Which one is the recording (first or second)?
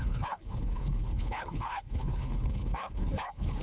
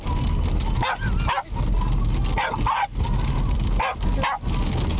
second